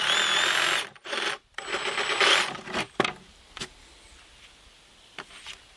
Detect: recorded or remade recorded